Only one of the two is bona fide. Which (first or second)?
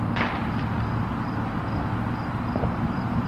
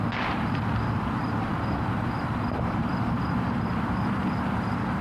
first